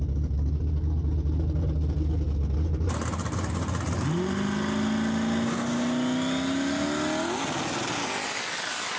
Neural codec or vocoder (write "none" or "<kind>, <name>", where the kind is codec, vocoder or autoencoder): none